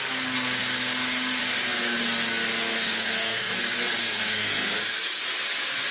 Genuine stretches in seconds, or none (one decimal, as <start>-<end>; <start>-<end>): 0.0-2.6; 3.6-4.0; 4.5-5.9